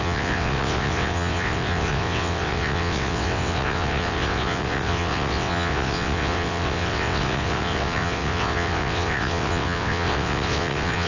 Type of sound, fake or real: fake